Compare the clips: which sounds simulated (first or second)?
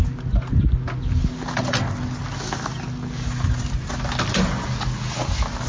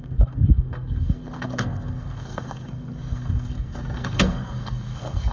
second